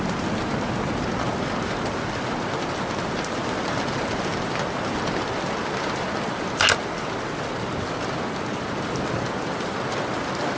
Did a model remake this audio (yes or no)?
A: no